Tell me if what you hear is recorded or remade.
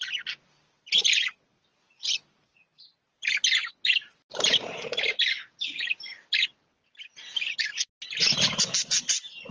recorded